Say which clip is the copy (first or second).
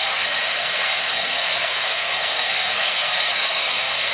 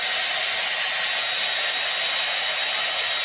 first